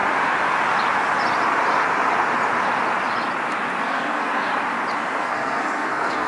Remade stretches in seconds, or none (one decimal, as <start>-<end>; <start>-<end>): 3.8-4.5; 5.2-6.3